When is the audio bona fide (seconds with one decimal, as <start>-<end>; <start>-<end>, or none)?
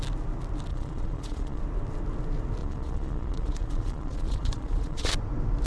0.0-0.7; 1.6-2.6; 5.1-5.7